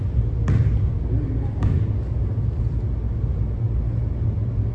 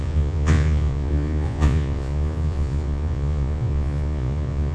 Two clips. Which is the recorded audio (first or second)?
first